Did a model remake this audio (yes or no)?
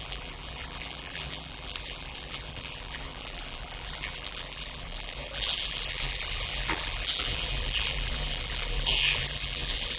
yes